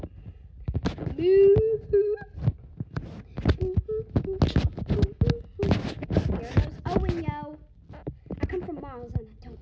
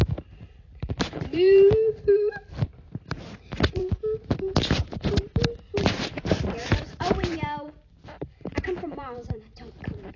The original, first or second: first